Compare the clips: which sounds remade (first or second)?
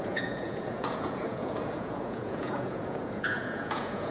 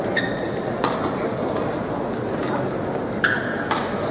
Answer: first